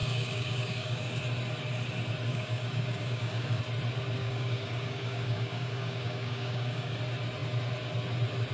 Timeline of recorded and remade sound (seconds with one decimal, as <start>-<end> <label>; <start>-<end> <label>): 0.0-1.2 remade; 1.2-2.3 recorded; 2.3-3.6 remade; 3.6-4.2 recorded; 4.2-7.0 remade; 7.0-8.5 recorded